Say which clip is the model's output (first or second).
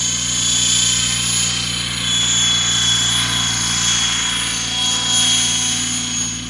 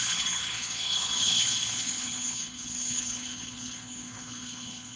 second